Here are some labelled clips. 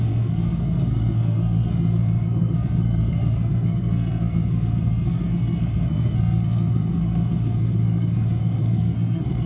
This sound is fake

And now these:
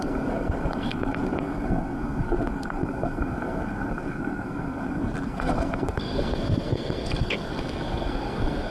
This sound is fake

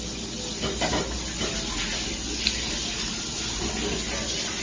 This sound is real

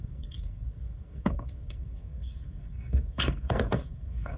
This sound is fake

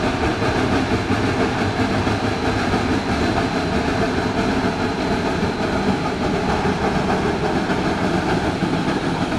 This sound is real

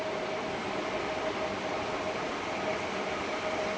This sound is real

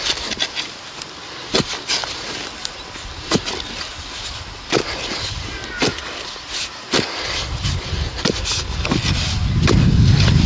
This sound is real